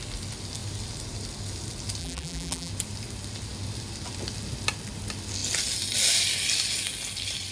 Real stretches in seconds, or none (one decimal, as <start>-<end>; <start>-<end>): 0.0-2.0; 2.7-7.5